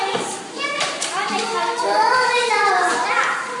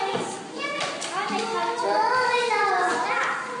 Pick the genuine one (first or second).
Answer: second